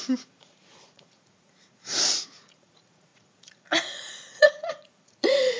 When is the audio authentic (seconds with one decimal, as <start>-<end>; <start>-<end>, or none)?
none